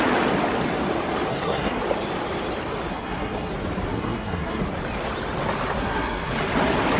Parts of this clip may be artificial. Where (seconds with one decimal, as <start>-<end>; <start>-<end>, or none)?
1.3-1.8; 2.9-3.5; 3.9-4.6; 5.8-6.3